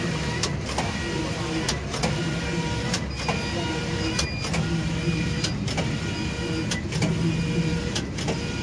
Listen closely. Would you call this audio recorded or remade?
recorded